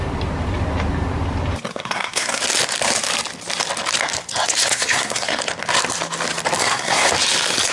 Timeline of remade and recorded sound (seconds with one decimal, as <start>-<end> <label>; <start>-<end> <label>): 0.0-1.7 recorded; 1.7-2.4 remade; 2.4-4.7 recorded; 4.7-5.4 remade; 5.4-6.6 recorded; 6.6-7.1 remade; 7.1-7.7 recorded